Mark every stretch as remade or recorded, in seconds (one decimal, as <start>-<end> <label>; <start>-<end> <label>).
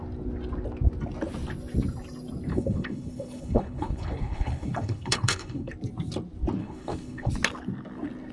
0.0-2.5 recorded; 2.5-5.7 remade; 5.7-6.6 recorded; 6.6-7.3 remade; 7.3-8.3 recorded